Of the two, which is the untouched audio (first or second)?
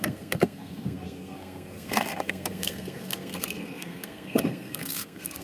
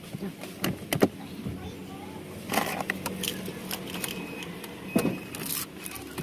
second